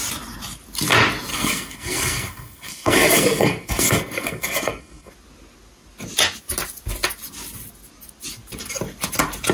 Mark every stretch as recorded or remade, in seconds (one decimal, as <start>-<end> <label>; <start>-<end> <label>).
0.0-1.3 recorded; 1.3-5.1 remade; 5.1-9.5 recorded